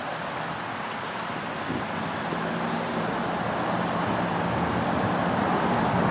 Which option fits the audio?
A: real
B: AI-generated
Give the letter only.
B